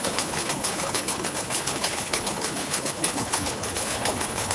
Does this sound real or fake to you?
fake